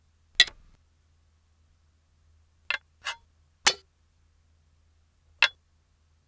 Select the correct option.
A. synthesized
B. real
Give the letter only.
B